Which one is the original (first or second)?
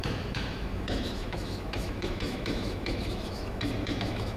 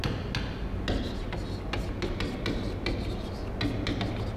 second